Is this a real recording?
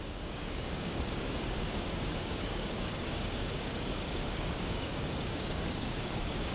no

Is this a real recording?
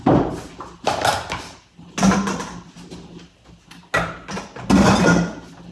yes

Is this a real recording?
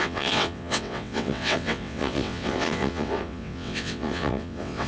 no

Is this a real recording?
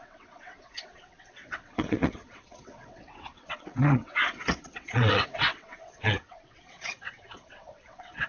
no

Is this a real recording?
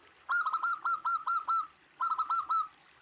no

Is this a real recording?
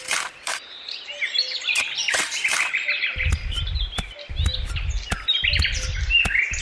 yes